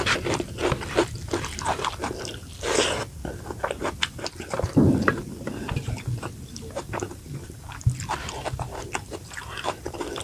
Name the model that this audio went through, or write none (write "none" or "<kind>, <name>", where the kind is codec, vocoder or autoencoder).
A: vocoder, BigVGAN v2